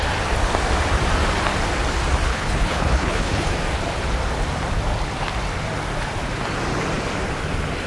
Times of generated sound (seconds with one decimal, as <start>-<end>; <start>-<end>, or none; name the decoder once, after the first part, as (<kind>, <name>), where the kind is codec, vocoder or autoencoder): 2.3-3.5 (codec, HILCodec)